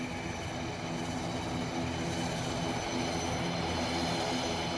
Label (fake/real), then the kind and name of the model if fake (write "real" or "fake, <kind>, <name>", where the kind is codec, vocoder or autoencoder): real